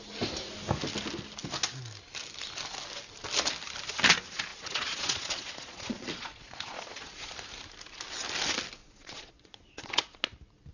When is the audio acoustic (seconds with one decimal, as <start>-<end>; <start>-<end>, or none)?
0.0-4.5; 7.3-8.8; 10.2-10.7